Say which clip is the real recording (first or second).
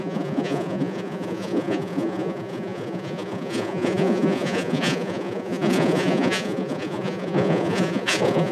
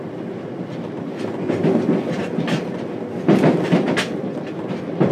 second